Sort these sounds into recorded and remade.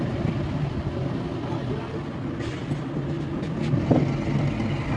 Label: recorded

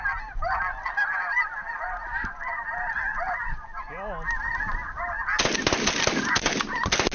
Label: recorded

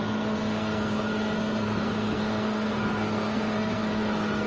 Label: remade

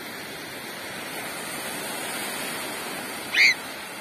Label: recorded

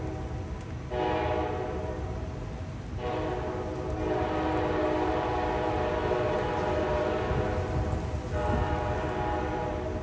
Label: recorded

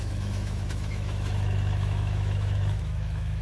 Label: remade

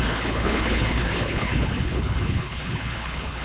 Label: remade